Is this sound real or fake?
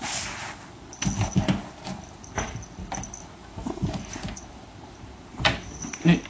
real